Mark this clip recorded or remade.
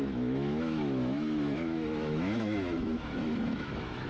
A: remade